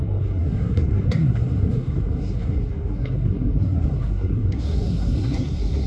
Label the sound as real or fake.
fake